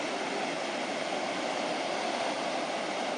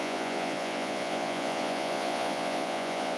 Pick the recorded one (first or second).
first